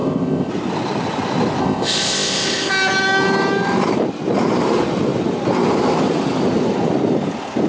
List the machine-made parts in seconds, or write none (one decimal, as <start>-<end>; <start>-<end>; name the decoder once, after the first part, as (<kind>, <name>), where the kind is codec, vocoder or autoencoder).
0.0-0.5 (codec, ZipCodec); 1.6-2.7